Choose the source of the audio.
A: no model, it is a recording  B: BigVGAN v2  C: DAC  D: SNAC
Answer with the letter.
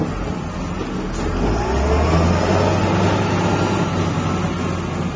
A